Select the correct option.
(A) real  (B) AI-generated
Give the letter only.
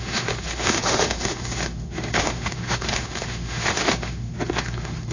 B